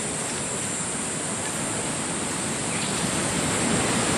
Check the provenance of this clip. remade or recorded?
remade